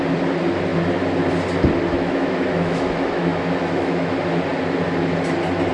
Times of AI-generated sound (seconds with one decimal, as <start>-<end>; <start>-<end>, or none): 1.9-4.1